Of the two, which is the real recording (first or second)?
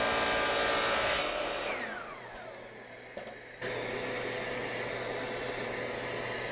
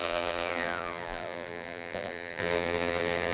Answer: first